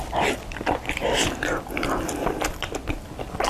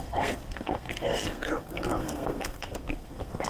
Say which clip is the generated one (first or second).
second